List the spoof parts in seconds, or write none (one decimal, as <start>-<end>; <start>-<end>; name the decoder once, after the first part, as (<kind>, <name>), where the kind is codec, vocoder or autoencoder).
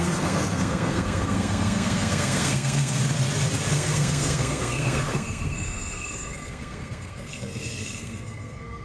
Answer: 0.0-3.0 (codec, SNAC); 3.7-8.8